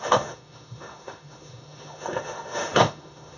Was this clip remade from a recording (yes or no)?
yes